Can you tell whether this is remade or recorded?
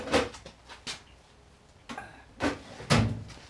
recorded